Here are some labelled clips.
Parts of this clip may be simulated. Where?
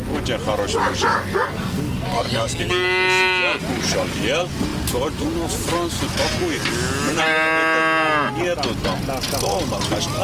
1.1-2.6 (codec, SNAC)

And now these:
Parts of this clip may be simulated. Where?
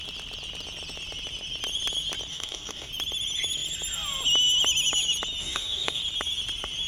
2.3-2.9 (codec, DAC); 5.4-6.0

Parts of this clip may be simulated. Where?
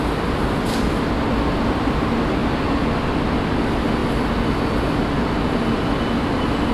none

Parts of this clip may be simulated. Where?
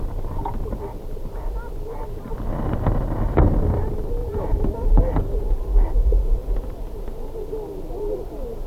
4.2-5.0 (vocoder, BigVGAN v2)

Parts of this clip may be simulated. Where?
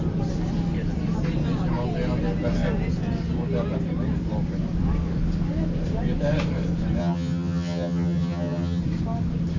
7.0-8.8 (vocoder, HiFi-GAN)